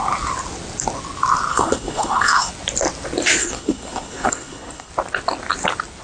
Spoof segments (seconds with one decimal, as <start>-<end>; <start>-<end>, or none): 1.5-2.5; 3.4-4.9